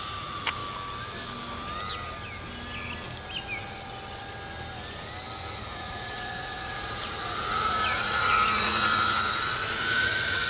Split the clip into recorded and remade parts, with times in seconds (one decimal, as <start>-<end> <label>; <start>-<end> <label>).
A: 0.0-0.6 remade; 0.6-5.5 recorded; 5.5-10.5 remade